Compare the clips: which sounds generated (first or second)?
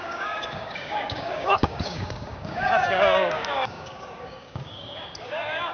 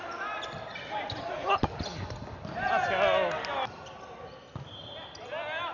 first